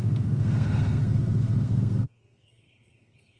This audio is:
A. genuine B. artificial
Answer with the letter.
B